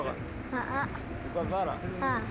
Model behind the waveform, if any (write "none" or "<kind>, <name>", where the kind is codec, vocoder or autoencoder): none